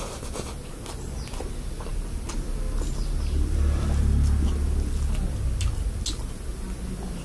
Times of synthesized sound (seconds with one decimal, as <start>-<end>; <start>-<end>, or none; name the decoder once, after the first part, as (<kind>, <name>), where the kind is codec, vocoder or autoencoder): none